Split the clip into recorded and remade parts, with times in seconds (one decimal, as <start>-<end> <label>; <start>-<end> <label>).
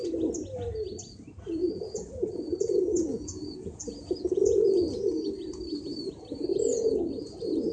0.0-1.6 recorded; 1.6-2.3 remade; 2.3-2.9 recorded; 2.9-4.6 remade; 4.6-6.5 recorded; 6.5-7.0 remade; 7.0-7.7 recorded